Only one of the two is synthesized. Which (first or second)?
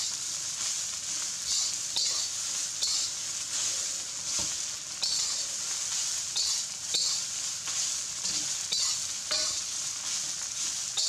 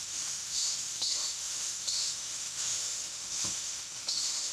second